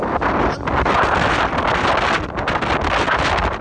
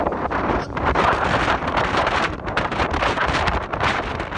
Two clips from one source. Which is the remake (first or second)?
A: second